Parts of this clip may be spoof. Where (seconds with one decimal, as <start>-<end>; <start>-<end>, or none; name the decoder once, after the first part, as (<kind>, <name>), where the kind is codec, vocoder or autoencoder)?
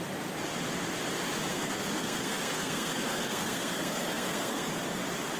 1.5-4.7 (codec, SNAC)